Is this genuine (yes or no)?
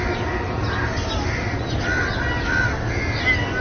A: yes